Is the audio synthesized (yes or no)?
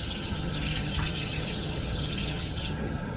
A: yes